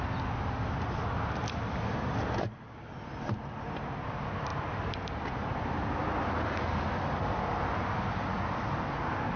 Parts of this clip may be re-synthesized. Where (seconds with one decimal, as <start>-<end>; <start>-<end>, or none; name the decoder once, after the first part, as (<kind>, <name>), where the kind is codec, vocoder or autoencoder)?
none